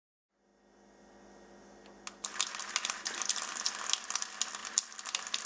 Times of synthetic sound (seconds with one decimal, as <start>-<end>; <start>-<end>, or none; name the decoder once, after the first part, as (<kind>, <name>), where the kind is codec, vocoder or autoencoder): 4.6-5.5 (vocoder, BigVGAN v2)